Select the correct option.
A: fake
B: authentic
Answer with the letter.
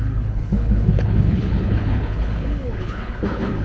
A